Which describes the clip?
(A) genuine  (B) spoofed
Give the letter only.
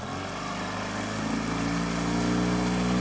A